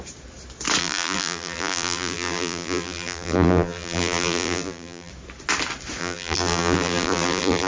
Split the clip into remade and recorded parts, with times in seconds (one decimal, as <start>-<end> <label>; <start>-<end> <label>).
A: 0.0-0.8 recorded; 0.8-5.1 remade; 5.1-6.0 recorded; 6.0-7.7 remade